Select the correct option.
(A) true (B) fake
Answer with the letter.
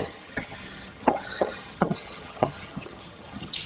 B